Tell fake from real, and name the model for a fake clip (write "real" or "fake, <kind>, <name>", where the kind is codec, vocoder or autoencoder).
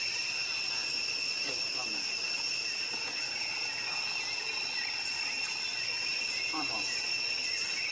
real